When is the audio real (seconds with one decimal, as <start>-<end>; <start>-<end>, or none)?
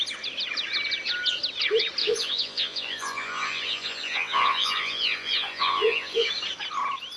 0.0-2.0; 6.3-7.2